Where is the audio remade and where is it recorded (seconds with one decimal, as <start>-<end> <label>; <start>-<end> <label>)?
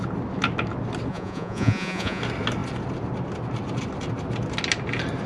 0.0-1.1 recorded; 1.1-2.2 remade; 2.2-5.3 recorded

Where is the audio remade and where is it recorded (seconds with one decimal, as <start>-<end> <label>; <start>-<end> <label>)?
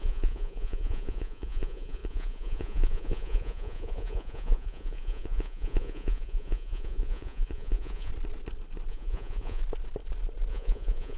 0.0-8.1 remade; 8.1-8.9 recorded; 8.9-9.6 remade; 9.6-10.5 recorded; 10.5-11.2 remade